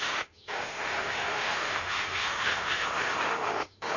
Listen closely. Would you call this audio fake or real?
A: fake